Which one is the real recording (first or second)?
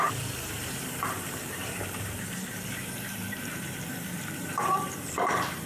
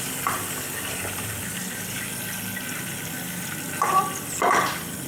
second